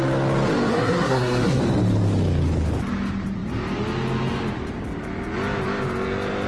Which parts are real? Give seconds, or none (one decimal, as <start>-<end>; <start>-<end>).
0.0-0.7; 1.6-6.5